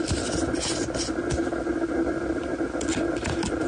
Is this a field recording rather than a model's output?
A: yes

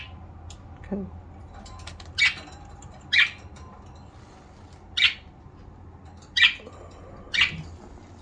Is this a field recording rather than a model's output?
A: yes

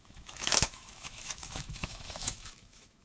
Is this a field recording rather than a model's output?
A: no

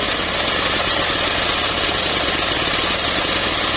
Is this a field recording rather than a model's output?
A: yes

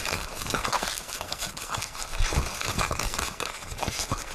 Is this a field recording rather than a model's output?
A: no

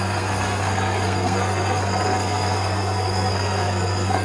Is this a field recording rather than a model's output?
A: no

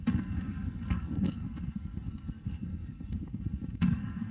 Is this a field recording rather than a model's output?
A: no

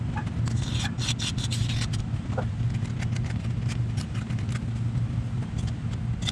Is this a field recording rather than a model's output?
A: yes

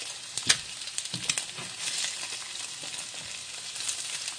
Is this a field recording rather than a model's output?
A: yes